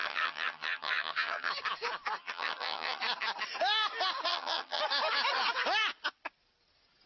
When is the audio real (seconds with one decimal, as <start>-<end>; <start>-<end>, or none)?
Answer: 1.5-2.2; 3.0-4.3; 4.8-7.1